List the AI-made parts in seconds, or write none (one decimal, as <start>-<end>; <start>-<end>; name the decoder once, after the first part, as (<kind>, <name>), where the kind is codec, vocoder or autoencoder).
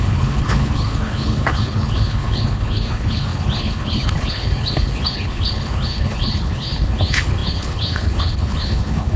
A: 0.0-9.2 (codec, HILCodec)